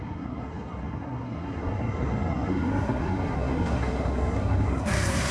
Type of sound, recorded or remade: remade